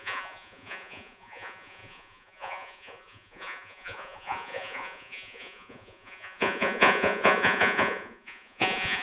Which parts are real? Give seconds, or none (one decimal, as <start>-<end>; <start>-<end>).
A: none